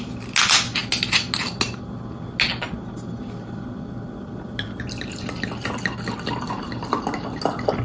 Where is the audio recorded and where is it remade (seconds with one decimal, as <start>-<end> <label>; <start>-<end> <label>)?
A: 0.0-7.8 recorded